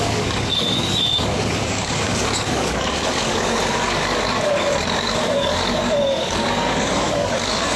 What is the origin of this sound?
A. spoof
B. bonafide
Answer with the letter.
A